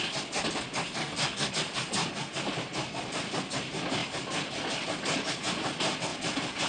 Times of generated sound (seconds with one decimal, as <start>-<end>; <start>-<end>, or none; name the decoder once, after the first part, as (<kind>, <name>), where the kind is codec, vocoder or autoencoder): 1.0-1.5 (codec, DAC)